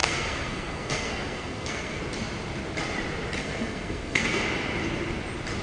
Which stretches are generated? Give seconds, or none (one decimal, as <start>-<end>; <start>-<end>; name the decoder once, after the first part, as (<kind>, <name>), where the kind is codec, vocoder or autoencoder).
0.0-2.0 (codec, SNAC); 3.4-4.4